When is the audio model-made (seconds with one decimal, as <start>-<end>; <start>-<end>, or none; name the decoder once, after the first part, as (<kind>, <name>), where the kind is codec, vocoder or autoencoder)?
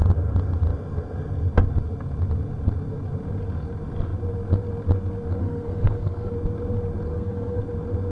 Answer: 5.4-6.3 (codec, SNAC); 7.1-7.6